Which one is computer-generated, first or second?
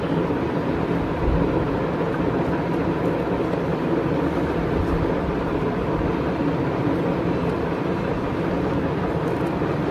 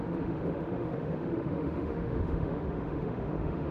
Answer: second